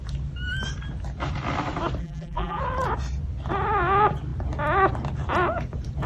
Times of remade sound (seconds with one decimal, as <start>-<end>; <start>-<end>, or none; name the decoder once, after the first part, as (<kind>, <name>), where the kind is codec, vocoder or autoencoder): 2.0-2.6 (vocoder, BigVGAN v2)